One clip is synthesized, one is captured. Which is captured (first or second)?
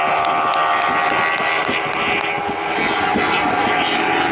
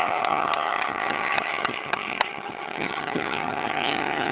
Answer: first